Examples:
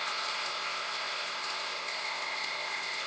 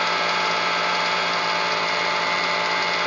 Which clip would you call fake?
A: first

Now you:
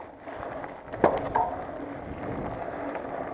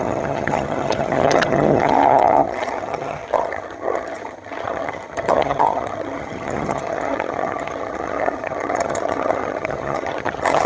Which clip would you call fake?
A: second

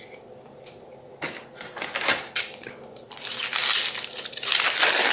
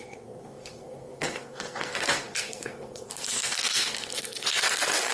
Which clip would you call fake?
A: second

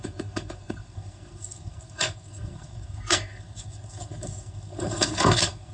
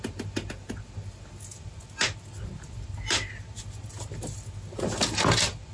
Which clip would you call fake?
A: first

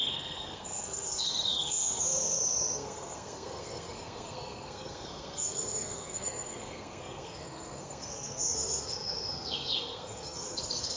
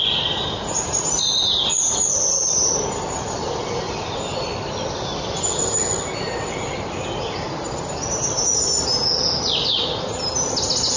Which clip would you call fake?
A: first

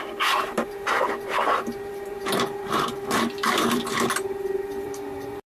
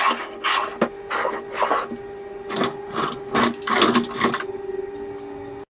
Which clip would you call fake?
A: first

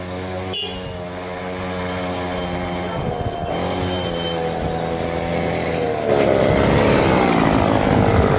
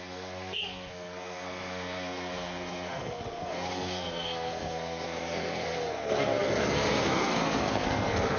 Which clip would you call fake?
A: second